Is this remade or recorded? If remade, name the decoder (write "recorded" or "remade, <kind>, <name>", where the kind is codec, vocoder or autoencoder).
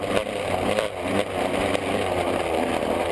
recorded